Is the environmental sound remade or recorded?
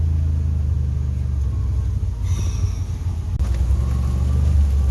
recorded